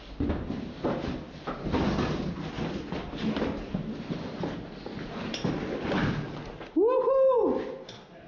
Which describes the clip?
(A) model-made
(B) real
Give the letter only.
B